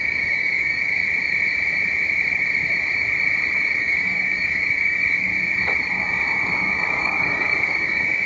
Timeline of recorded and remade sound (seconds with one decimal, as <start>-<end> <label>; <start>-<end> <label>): 0.0-1.0 remade; 1.0-3.8 recorded; 3.8-5.3 remade; 5.3-5.9 recorded; 5.9-8.3 remade